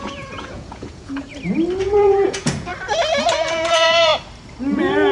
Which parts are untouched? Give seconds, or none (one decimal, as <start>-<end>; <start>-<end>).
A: 1.3-1.8; 2.7-3.5; 4.1-5.1